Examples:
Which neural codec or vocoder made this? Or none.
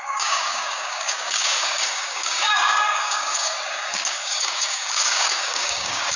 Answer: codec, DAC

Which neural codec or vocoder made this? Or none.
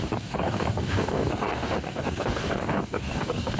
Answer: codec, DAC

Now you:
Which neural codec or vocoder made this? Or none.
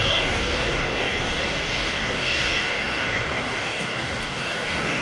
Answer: codec, DAC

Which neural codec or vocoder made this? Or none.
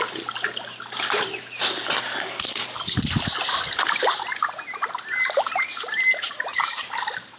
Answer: none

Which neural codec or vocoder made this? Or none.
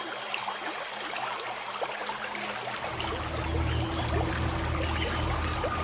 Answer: none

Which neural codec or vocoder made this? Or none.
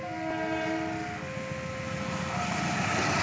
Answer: none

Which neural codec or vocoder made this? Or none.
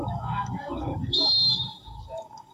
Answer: codec, DAC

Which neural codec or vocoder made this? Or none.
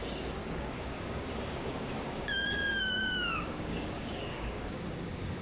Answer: codec, DAC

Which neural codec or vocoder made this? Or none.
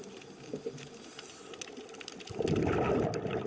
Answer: none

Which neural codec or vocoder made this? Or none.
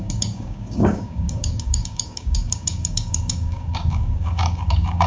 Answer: codec, DAC